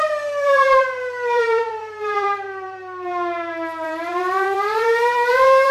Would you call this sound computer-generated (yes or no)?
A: yes